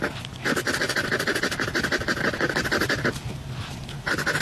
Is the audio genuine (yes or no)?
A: yes